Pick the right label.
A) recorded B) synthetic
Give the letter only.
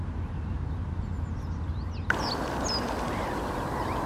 A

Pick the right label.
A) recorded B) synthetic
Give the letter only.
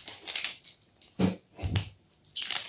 A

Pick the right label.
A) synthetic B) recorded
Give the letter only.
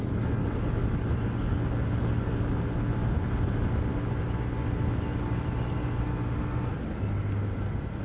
B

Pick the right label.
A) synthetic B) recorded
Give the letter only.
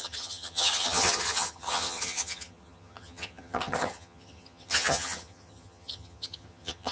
A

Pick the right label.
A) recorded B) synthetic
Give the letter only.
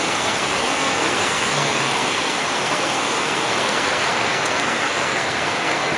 B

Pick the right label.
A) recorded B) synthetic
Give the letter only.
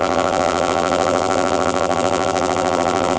B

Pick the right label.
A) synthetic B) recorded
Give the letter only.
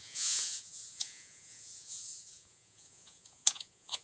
A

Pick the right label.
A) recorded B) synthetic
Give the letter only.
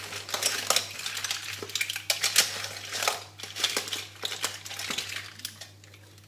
A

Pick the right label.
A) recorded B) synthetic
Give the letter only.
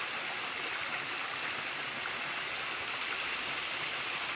A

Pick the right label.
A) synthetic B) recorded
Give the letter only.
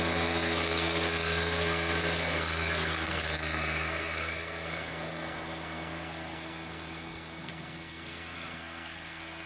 A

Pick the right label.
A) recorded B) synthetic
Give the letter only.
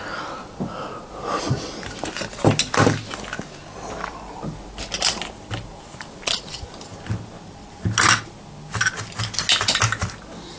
A